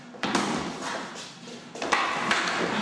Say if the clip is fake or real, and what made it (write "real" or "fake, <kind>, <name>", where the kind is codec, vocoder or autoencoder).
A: real